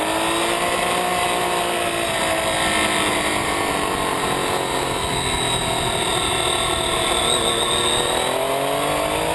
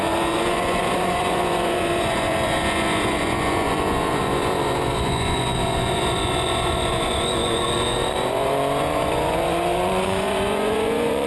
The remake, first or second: second